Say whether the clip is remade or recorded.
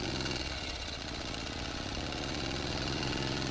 remade